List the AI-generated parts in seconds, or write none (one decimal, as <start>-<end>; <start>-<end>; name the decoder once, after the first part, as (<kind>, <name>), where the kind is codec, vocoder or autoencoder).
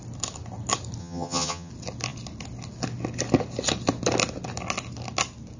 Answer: 1.0-1.7 (vocoder, HiFi-GAN)